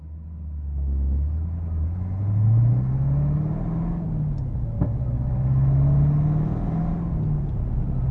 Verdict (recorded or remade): recorded